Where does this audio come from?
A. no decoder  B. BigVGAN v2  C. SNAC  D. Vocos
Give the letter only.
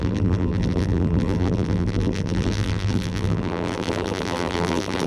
B